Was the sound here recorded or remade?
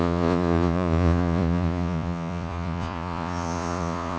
remade